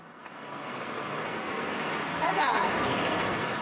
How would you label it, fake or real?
fake